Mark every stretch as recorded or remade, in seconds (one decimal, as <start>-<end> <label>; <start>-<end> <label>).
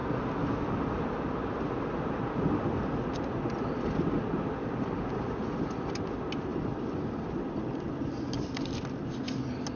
0.0-9.8 recorded